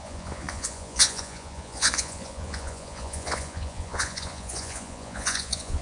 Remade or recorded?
remade